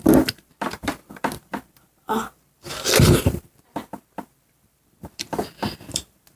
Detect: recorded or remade remade